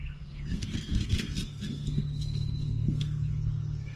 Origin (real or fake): fake